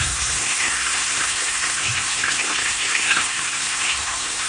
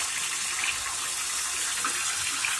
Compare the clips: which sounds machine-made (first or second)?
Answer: first